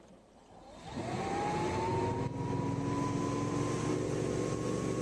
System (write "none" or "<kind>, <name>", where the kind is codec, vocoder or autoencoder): none